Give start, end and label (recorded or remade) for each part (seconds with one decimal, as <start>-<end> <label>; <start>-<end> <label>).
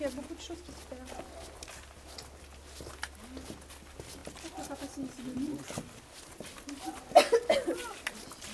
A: 0.0-8.5 recorded